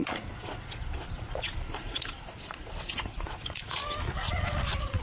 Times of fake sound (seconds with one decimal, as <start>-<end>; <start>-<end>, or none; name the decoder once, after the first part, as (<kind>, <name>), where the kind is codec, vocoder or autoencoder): 0.0-3.8 (vocoder, Vocos); 4.3-5.0